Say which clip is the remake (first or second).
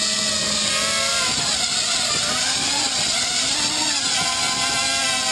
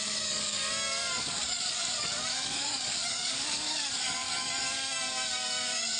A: second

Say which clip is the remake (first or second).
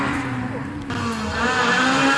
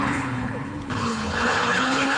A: second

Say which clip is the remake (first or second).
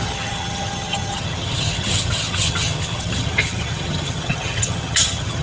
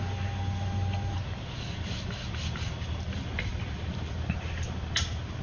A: first